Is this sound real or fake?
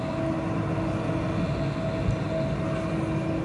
real